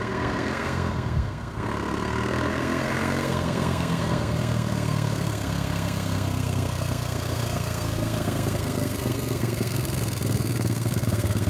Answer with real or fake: fake